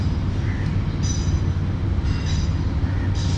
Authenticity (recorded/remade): recorded